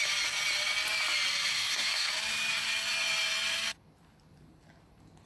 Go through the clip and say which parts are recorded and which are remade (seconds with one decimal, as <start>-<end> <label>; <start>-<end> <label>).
0.0-1.5 recorded; 1.5-2.1 remade; 2.1-5.3 recorded